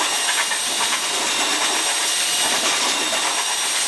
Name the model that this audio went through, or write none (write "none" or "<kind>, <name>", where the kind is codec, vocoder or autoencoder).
none